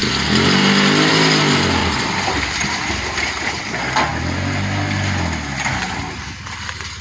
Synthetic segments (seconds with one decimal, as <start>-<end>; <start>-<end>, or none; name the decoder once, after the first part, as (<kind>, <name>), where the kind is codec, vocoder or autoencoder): 1.8-3.6 (vocoder, BigVGAN v2)